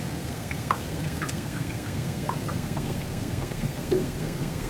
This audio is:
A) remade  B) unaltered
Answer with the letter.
A